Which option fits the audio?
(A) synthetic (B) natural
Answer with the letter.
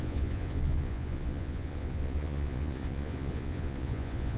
A